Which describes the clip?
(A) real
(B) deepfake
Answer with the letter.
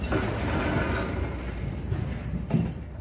A